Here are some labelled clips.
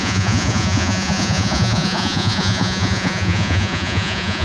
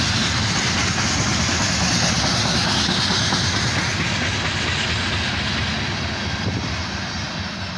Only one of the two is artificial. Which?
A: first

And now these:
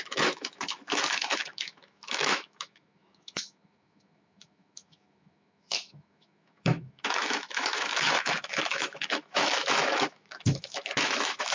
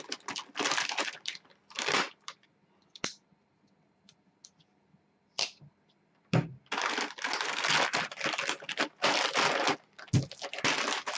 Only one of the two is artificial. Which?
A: first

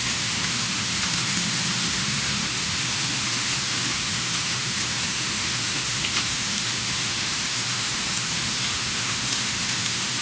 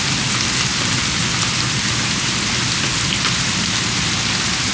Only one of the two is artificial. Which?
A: first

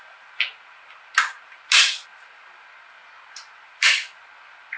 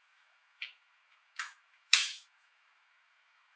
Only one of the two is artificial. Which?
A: second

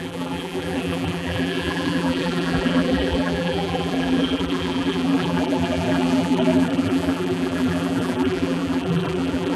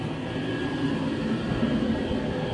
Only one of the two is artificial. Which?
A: first